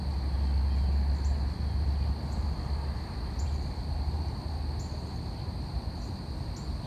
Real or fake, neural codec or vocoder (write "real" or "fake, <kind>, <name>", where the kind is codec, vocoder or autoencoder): real